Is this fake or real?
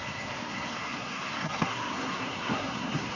fake